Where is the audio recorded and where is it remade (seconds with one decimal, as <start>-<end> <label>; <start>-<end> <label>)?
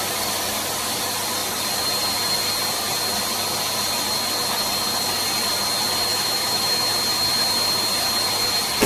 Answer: 0.0-6.1 recorded; 6.1-6.9 remade; 6.9-8.9 recorded